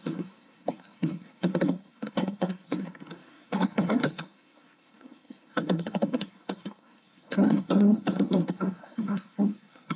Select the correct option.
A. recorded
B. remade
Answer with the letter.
B